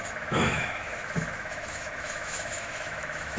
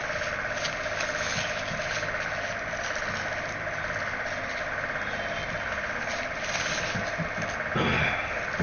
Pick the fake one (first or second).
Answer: first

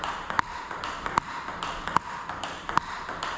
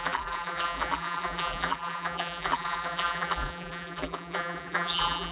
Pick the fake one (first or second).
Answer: second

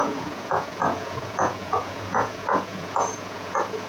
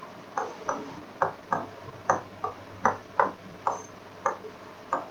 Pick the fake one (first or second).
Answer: first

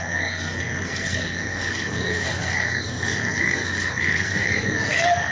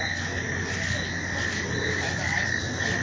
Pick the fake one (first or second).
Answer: first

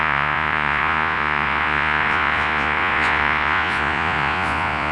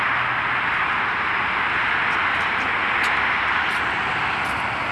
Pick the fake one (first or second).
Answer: first